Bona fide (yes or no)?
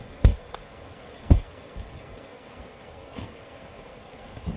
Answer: no